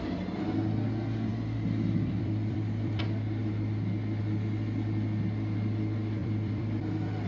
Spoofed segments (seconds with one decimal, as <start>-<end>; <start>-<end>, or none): 1.3-3.0; 6.2-7.3